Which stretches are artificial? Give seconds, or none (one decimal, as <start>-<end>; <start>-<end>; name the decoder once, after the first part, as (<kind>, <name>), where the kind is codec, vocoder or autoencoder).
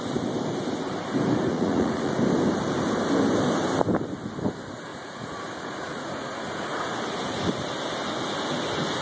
1.5-2.1 (vocoder, Vocos); 4.9-7.0